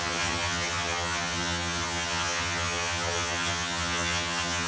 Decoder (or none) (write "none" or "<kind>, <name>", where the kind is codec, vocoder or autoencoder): vocoder, HiFi-GAN